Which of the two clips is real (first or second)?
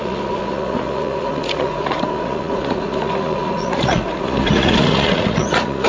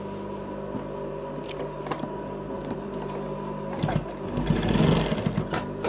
second